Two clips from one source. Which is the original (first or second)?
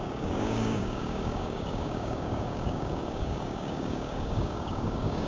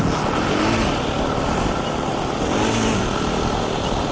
second